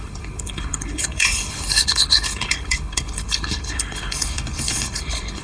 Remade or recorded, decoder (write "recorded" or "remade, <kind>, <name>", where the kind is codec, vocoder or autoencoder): remade, codec, HILCodec